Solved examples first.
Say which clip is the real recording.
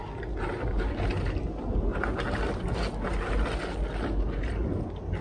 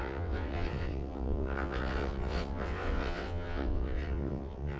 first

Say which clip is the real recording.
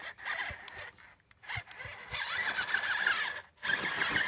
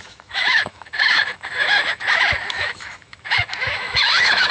first